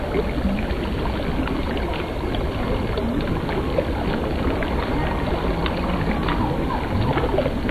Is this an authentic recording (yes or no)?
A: yes